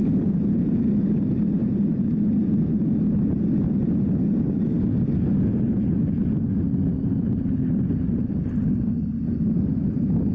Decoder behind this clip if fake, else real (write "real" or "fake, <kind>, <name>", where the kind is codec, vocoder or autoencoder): real